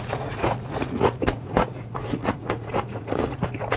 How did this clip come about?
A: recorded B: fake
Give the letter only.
B